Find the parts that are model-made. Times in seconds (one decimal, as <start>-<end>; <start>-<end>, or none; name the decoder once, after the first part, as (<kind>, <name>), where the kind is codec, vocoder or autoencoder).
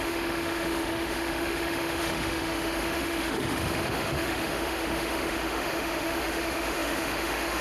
0.0-7.6 (autoencoder, DAC-VAE)